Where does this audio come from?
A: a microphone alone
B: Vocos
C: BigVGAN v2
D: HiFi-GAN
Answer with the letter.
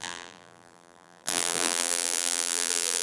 C